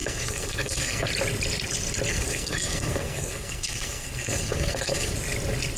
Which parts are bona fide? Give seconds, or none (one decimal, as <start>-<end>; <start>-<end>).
1.1-2.1; 5.1-5.8